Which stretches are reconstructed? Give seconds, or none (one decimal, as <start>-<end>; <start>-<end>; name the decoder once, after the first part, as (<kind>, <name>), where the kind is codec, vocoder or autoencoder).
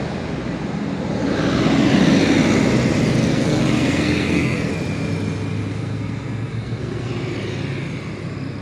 3.3-4.7 (codec, SNAC); 5.7-7.1